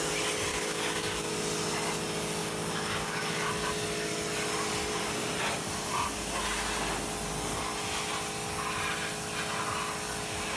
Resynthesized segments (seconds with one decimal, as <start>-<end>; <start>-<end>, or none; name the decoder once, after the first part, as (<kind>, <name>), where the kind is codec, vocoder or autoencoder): 0.5-1.3 (codec, DAC); 2.4-3.5